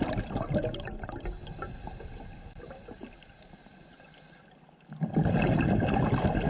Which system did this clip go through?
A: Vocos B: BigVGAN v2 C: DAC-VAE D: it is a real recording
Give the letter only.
D